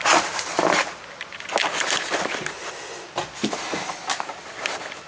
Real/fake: real